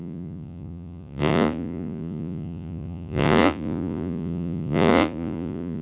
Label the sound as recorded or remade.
remade